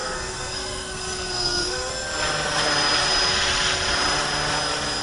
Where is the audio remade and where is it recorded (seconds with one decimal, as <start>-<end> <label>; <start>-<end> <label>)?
0.0-1.9 remade; 1.9-5.0 recorded